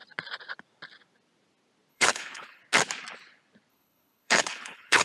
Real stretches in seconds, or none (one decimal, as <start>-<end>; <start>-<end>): 0.0-1.9; 2.6-3.7